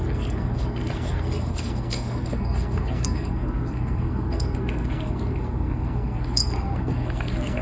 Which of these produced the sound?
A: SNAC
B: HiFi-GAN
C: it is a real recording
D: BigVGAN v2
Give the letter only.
A